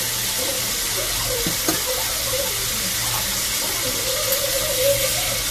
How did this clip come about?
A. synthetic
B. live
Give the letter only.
B